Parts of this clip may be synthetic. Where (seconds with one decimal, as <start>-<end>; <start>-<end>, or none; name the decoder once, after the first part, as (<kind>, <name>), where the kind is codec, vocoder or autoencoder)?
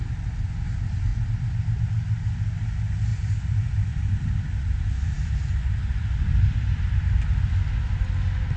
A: 1.1-1.8 (vocoder, BigVGAN v2); 3.1-7.7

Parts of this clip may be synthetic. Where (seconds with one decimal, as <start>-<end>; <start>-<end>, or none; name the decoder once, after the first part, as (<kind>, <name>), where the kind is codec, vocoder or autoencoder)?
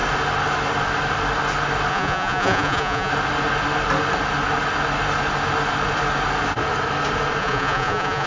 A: 1.9-3.1 (vocoder, Vocos); 7.4-8.3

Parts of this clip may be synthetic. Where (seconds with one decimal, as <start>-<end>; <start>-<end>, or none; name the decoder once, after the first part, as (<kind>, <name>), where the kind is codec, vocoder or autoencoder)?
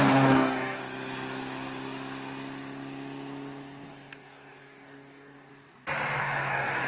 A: 0.0-0.8 (codec, DAC); 3.9-5.5; 6.2-6.9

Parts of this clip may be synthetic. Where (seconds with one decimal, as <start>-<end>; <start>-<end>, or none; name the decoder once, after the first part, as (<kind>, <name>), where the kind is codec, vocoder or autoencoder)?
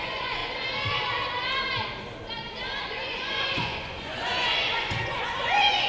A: 0.0-0.4 (vocoder, Vocos); 2.8-5.9